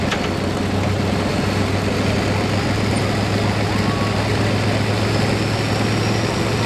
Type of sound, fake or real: real